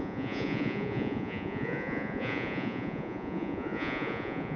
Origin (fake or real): fake